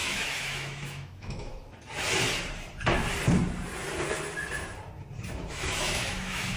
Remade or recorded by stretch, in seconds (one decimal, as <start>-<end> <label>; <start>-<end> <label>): 0.0-1.5 remade; 1.5-5.5 recorded; 5.5-6.6 remade